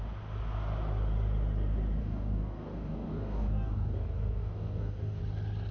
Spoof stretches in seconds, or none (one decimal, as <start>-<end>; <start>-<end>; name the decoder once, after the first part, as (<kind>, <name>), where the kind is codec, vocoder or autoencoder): 2.0-5.2 (codec, DAC)